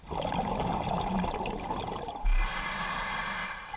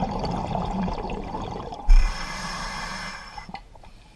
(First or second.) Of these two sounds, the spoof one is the second